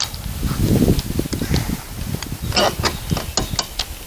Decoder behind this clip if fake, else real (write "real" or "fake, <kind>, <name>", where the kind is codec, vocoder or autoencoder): real